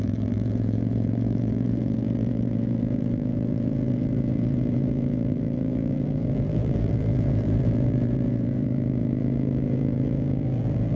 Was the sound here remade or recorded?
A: remade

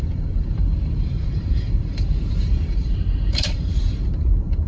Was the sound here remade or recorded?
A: remade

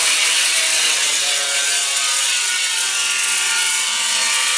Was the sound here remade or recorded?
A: remade